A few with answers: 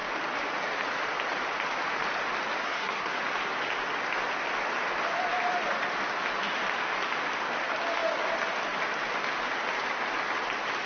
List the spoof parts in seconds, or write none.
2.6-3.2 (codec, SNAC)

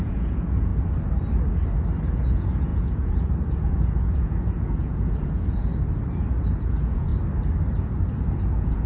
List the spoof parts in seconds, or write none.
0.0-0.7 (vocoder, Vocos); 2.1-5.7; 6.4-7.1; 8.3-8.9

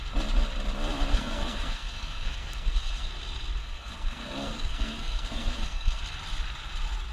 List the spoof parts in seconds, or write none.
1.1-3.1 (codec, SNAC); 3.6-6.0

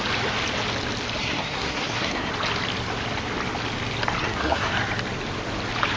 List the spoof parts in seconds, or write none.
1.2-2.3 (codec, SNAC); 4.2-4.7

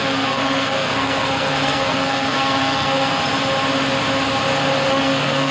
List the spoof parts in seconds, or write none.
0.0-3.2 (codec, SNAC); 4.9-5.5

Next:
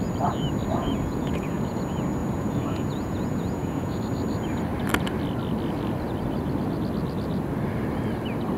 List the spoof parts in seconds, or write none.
0.7-1.8 (vocoder, Vocos); 2.2-4.0